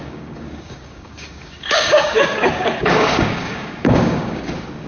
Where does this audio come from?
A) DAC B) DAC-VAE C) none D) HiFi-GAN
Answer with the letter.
A